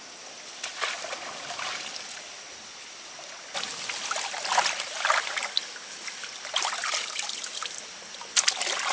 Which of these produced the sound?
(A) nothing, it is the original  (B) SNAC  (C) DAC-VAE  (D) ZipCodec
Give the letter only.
A